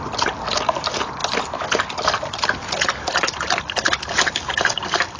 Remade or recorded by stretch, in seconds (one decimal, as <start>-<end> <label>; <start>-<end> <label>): 0.0-5.2 recorded